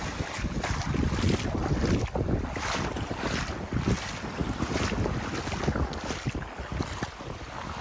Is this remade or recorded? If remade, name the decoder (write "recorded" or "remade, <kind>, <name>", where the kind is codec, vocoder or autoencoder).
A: recorded